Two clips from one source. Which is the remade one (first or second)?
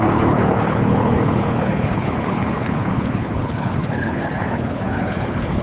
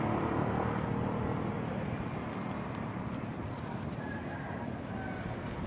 first